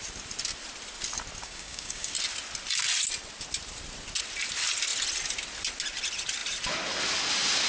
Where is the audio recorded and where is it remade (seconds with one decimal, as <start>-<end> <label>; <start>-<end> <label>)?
0.0-1.4 recorded; 1.4-2.1 remade; 2.1-7.7 recorded